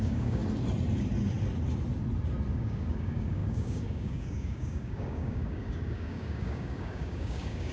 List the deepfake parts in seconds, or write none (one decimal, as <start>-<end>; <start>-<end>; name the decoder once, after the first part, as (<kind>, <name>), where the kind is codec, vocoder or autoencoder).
0.0-0.4 (codec, DAC); 2.5-7.7